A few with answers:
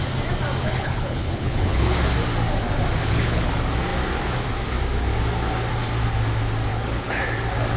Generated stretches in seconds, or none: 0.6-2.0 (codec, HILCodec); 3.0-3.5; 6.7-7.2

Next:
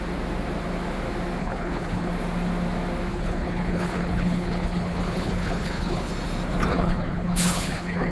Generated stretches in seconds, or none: 1.4-2.1 (codec, HILCodec); 3.1-6.1; 6.7-8.1

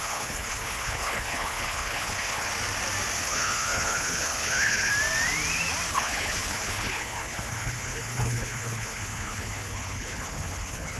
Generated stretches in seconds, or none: 0.0-2.5 (codec, HILCodec); 3.2-4.9; 5.9-11.0

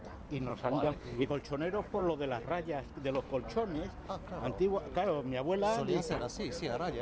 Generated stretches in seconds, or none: 0.5-1.3 (codec, HILCodec)

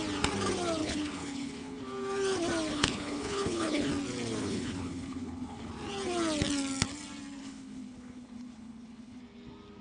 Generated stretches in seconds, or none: 0.8-1.8 (codec, HILCodec); 2.7-3.9; 4.4-5.7; 7.4-9.2